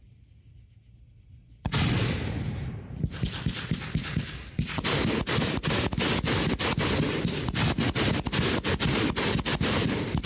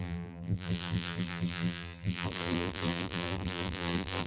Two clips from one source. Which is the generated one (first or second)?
second